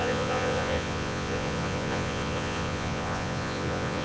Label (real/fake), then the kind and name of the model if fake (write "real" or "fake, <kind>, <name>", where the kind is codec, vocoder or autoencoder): fake, vocoder, Vocos